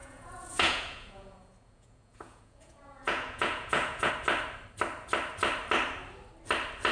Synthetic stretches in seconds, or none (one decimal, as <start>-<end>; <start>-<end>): 0.0-4.1